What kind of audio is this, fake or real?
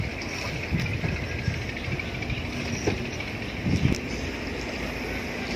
real